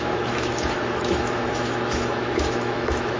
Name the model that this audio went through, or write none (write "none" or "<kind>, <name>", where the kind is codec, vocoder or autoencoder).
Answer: autoencoder, DAC-VAE